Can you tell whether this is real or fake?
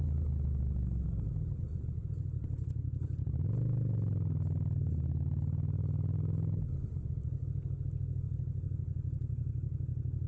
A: real